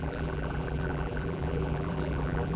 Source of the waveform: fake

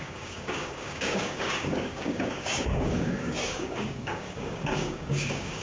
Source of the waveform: fake